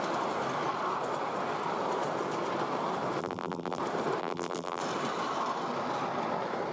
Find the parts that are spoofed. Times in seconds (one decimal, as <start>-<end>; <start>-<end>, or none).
3.2-3.8; 4.2-4.8